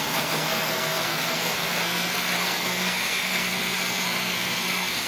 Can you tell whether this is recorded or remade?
remade